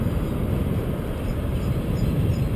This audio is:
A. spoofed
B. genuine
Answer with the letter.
B